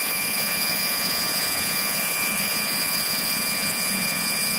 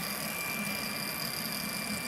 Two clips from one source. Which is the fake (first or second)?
first